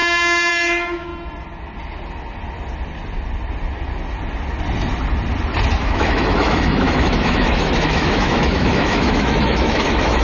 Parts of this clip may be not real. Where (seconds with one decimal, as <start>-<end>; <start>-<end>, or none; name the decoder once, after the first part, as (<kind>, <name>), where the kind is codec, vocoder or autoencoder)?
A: 0.5-1.1 (autoencoder, DAC-VAE); 5.8-10.2